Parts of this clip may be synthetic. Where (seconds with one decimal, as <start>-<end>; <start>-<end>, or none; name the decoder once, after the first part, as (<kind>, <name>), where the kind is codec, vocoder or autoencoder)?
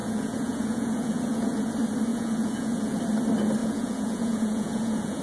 0.0-1.7 (vocoder, Vocos); 2.1-3.0; 3.6-5.2